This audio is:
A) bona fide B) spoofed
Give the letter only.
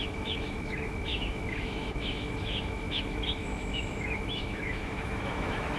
B